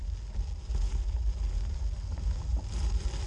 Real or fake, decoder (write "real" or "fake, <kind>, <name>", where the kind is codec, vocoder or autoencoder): real